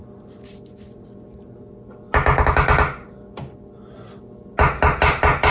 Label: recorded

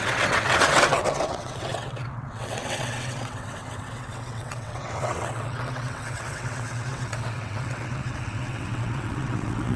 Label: remade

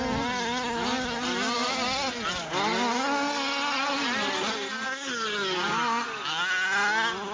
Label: recorded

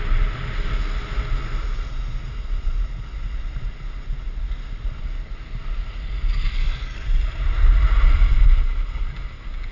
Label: recorded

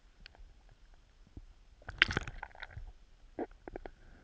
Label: recorded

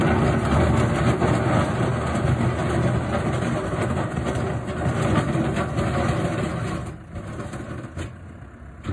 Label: recorded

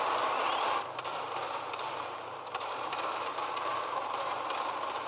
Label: remade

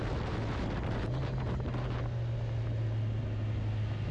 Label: recorded